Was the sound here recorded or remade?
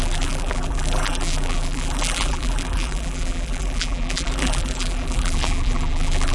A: remade